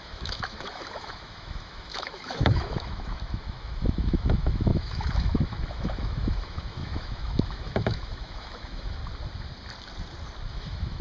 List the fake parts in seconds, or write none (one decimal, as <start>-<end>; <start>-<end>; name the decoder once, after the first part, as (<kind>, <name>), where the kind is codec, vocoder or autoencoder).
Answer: 0.0-9.0 (autoencoder, DAC-VAE); 10.5-11.0